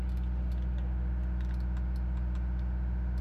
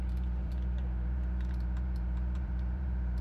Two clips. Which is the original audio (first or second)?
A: first